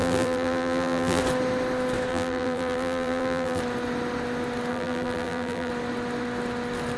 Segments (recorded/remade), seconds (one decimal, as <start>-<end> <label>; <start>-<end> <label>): 0.0-1.2 remade; 1.2-2.1 recorded; 2.1-3.6 remade; 3.6-4.7 recorded; 4.7-5.7 remade; 5.7-7.0 recorded

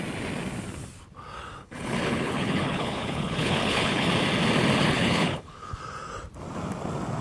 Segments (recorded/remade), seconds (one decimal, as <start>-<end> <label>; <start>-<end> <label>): 0.0-1.6 recorded; 1.6-4.1 remade; 4.1-4.8 recorded; 4.8-5.8 remade; 5.8-7.2 recorded

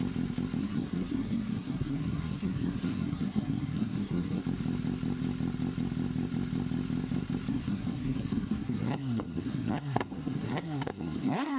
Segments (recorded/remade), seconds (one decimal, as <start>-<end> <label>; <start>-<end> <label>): 0.0-0.6 recorded; 0.6-4.4 remade; 4.4-7.5 recorded; 7.5-11.6 remade

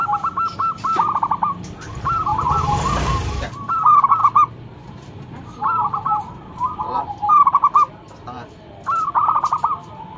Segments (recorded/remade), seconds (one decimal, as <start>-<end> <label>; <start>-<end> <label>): 0.0-2.3 recorded; 2.3-3.7 remade; 3.7-4.2 recorded; 4.2-7.3 remade; 7.3-10.2 recorded

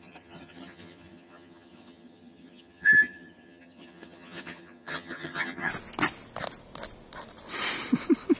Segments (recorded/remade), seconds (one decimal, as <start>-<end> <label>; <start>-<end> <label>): 0.0-5.7 remade; 5.7-8.4 recorded